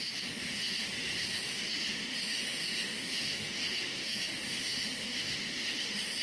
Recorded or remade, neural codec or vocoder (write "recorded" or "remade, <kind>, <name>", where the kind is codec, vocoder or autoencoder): remade, autoencoder, DAC-VAE